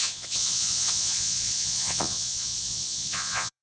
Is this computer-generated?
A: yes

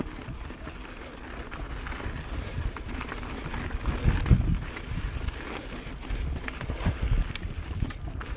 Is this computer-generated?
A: no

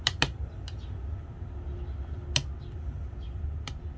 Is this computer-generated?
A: no